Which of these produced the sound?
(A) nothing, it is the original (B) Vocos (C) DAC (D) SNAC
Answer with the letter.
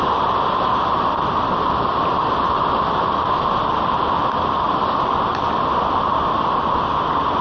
A